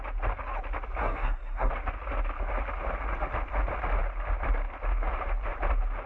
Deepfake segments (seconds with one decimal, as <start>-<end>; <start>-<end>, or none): 1.0-1.7